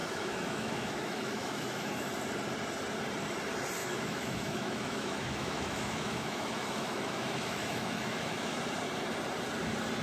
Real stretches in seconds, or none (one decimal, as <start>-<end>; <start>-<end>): 2.1-3.8; 8.6-10.0